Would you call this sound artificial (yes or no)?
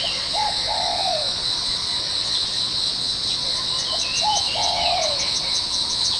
yes